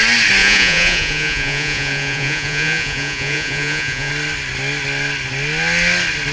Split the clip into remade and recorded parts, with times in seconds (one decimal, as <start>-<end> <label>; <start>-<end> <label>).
0.0-0.4 recorded; 0.4-4.1 remade; 4.1-6.3 recorded